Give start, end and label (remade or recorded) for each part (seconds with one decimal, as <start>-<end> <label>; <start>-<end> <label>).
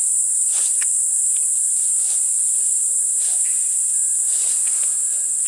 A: 0.0-0.9 remade; 0.9-2.2 recorded; 2.2-5.5 remade